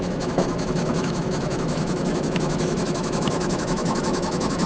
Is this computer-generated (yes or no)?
yes